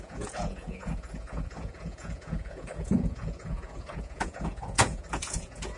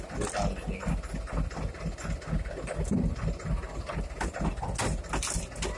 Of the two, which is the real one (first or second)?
second